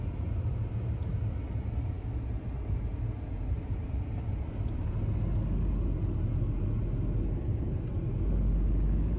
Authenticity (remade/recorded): recorded